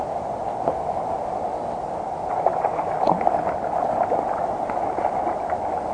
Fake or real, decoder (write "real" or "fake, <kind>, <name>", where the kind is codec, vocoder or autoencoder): real